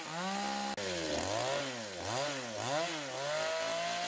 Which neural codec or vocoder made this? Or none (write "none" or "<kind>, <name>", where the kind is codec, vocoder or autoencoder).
none